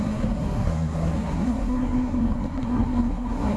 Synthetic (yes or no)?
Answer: yes